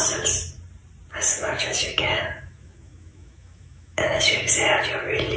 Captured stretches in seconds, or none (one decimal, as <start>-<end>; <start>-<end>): 0.0-1.3; 4.5-5.4